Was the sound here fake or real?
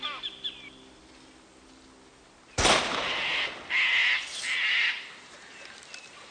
real